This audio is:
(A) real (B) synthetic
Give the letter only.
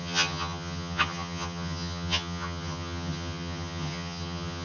B